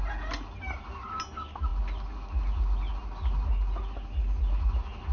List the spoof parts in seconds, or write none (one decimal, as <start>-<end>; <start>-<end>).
none